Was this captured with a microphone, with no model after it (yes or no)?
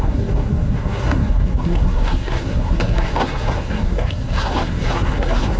no